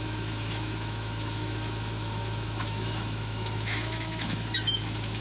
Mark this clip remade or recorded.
remade